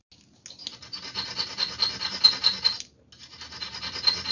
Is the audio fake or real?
real